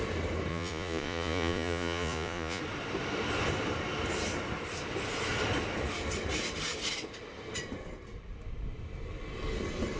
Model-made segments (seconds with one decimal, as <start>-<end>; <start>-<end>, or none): 0.5-2.6